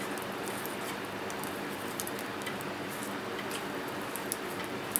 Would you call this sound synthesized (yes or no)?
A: no